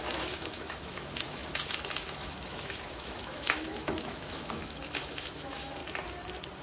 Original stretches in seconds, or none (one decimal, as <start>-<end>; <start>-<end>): 5.8-6.6